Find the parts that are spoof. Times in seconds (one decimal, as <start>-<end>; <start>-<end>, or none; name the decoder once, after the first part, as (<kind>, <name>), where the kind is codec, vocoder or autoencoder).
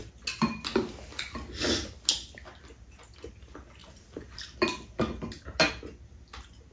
none